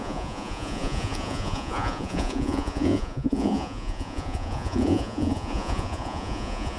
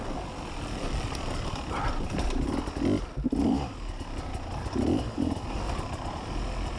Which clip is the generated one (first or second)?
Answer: first